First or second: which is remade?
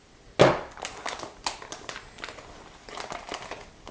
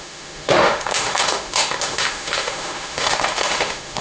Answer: second